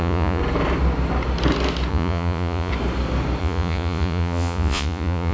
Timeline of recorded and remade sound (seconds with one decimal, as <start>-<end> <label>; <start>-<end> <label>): 0.0-0.4 remade; 0.4-1.9 recorded; 1.9-2.7 remade; 2.7-3.4 recorded; 3.4-5.3 remade